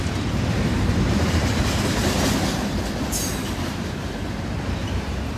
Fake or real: fake